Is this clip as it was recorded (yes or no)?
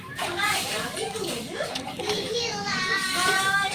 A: no